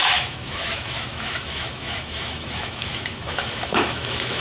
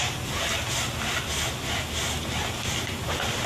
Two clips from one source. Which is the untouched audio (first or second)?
second